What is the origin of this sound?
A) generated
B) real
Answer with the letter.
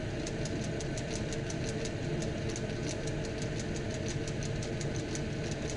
B